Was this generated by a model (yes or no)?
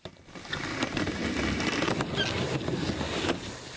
no